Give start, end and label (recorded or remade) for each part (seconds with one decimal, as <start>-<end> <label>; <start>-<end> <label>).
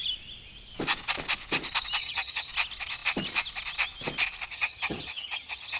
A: 0.0-2.0 recorded; 2.0-2.5 remade; 2.5-4.5 recorded; 4.5-5.8 remade